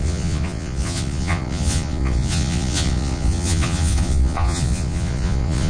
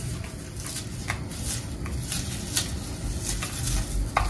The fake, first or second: first